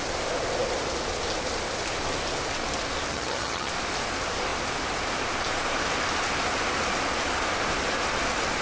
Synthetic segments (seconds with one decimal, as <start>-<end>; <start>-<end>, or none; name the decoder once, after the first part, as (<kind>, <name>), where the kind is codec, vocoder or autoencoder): 3.1-3.7 (vocoder, HiFi-GAN)